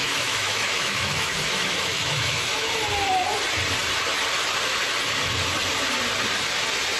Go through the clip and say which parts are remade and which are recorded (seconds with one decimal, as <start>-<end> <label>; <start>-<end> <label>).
0.0-2.7 remade; 2.7-7.0 recorded

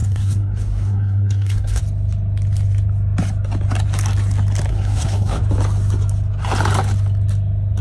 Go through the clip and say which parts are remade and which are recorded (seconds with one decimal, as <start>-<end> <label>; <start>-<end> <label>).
0.0-1.8 remade; 1.8-4.7 recorded; 4.7-5.4 remade; 5.4-7.8 recorded

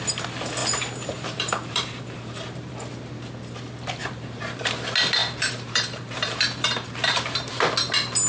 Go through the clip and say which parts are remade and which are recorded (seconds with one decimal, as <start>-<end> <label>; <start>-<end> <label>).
0.0-0.6 recorded; 0.6-2.7 remade; 2.7-4.0 recorded; 4.0-4.7 remade; 4.7-5.2 recorded; 5.2-7.5 remade; 7.5-8.3 recorded

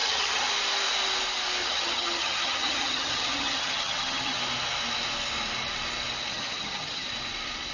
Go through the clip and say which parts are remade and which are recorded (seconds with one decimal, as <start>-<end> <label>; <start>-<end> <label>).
0.0-0.5 remade; 0.5-1.6 recorded; 1.6-4.4 remade; 4.4-6.3 recorded; 6.3-7.1 remade; 7.1-7.7 recorded

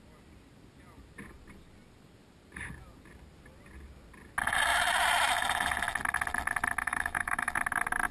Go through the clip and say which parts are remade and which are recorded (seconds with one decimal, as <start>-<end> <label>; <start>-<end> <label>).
0.0-6.8 recorded; 6.8-7.5 remade; 7.5-8.1 recorded